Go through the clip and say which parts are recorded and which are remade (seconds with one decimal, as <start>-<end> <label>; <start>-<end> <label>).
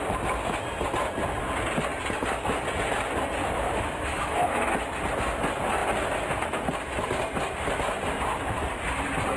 0.0-3.4 recorded; 3.4-4.7 remade; 4.7-9.4 recorded